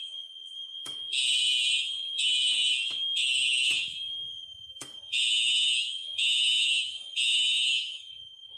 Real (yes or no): no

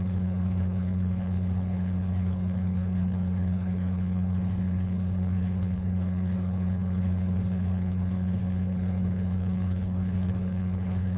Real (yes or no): no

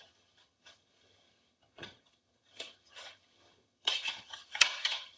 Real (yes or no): no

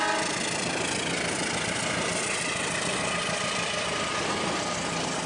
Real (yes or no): yes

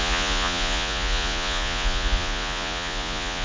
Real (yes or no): no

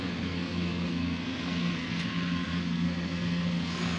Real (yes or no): no